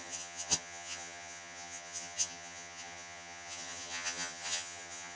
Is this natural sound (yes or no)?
no